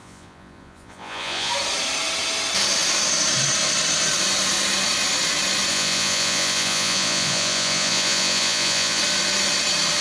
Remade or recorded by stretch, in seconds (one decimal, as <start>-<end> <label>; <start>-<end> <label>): 0.0-1.5 remade; 1.5-5.7 recorded; 5.7-9.0 remade; 9.0-10.0 recorded